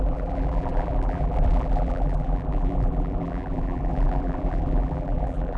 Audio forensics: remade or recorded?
remade